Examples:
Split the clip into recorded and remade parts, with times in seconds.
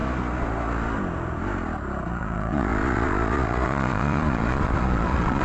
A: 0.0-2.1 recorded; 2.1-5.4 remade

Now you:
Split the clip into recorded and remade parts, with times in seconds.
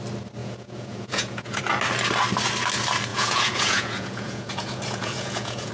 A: 0.0-0.4 recorded; 0.4-1.6 remade; 1.6-3.1 recorded; 3.1-5.7 remade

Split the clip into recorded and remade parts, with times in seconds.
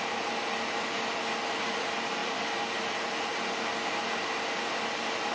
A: 0.0-5.3 recorded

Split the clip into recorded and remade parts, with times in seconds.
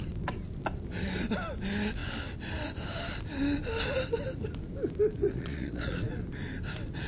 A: 0.0-5.2 recorded; 5.2-6.2 remade; 6.2-7.1 recorded